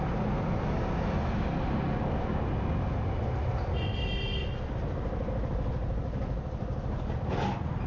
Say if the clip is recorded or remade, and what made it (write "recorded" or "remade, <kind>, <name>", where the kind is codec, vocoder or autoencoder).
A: recorded